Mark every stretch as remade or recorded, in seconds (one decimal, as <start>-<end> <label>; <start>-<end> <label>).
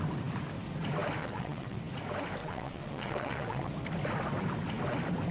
0.0-1.2 recorded; 1.2-1.8 remade; 1.8-2.4 recorded; 2.4-3.7 remade; 3.7-5.3 recorded